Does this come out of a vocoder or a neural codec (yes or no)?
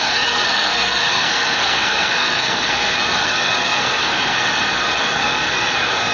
yes